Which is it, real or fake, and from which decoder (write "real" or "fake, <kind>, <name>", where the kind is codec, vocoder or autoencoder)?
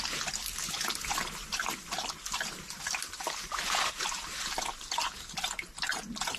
real